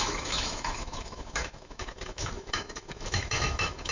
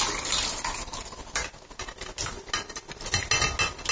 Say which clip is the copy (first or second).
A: first